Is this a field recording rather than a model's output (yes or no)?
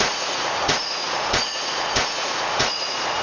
no